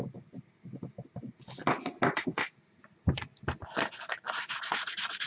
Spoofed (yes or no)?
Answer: no